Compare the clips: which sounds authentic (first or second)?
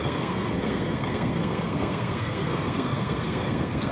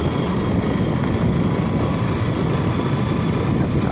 second